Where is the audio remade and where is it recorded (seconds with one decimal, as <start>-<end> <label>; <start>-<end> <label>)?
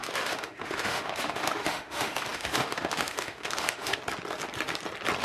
0.0-4.0 remade; 4.0-5.2 recorded